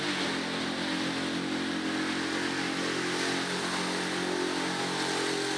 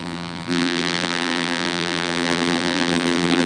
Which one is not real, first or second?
second